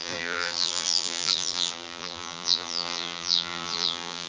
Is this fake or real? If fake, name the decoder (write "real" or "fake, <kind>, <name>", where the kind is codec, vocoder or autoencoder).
fake, vocoder, BigVGAN v2